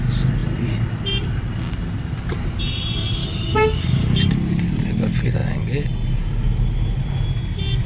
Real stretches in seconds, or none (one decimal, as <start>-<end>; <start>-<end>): 0.0-3.2; 4.2-7.9

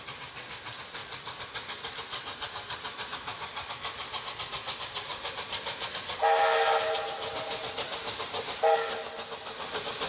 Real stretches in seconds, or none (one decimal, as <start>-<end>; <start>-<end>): 0.0-10.1

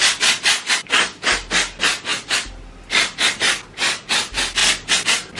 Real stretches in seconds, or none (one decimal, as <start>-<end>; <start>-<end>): 0.0-5.4

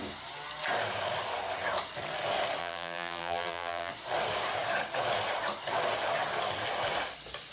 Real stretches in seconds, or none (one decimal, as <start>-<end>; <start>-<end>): 0.0-2.6; 3.9-7.5